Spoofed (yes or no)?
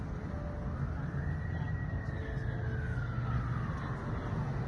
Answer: no